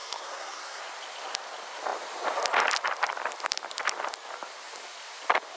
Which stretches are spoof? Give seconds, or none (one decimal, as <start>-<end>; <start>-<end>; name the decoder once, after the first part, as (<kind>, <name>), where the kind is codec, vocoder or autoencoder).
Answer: 0.0-0.8 (codec, SNAC)